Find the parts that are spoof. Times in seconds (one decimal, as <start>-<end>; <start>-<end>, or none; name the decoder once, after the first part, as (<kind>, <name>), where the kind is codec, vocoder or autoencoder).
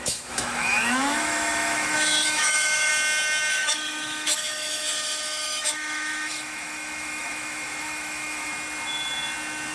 0.0-2.9 (autoencoder, DAC-VAE); 3.5-8.5